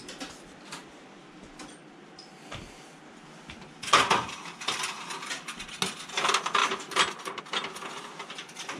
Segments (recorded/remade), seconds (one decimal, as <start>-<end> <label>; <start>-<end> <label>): 0.0-8.8 recorded